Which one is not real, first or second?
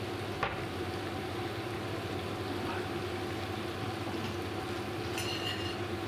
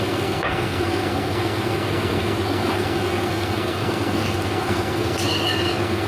second